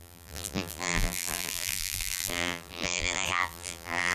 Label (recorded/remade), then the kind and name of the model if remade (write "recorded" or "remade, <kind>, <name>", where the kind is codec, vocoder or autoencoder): remade, vocoder, BigVGAN v2